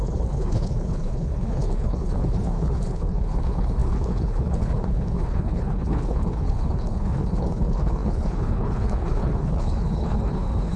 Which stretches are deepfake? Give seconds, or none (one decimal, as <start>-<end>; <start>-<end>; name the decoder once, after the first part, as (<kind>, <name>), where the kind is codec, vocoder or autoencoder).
0.0-10.8 (codec, HILCodec)

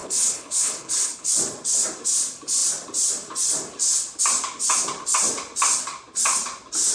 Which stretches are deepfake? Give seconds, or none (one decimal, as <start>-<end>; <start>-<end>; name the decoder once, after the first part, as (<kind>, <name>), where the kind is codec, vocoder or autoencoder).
0.0-1.3 (codec, HILCodec)

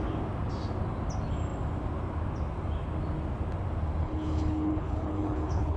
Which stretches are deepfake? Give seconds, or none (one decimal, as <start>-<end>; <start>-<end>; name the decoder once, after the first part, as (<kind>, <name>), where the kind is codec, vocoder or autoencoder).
4.0-5.8 (codec, HILCodec)

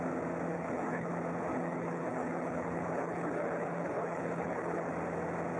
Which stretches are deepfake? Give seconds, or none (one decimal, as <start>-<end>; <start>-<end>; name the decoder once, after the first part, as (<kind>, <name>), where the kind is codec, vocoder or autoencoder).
0.5-1.1 (codec, HILCodec); 1.5-4.9